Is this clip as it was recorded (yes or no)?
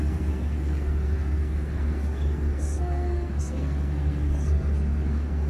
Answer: no